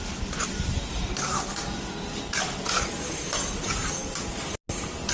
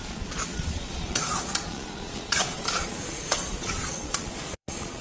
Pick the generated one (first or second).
second